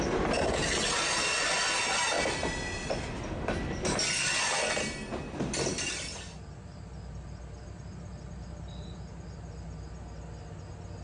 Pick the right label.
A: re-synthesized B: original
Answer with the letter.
B